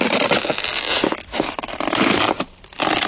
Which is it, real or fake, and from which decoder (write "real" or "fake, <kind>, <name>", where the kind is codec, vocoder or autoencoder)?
real